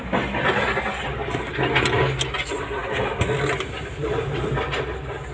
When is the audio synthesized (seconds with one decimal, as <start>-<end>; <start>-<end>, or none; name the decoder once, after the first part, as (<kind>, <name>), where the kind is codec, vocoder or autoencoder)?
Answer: none